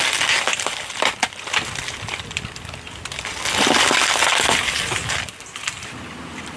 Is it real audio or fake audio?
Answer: real